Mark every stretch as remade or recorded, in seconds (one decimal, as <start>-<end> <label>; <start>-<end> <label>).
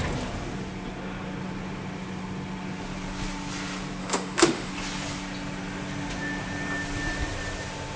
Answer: 0.0-4.0 recorded; 4.0-4.7 remade; 4.7-8.0 recorded